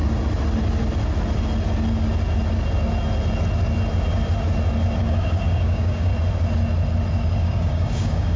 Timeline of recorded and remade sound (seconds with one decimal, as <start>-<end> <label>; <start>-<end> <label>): 0.0-5.0 recorded; 5.0-6.1 remade; 6.1-7.4 recorded; 7.4-8.4 remade